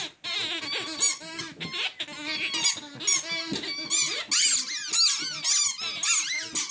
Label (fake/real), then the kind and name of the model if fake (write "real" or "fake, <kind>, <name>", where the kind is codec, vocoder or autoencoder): real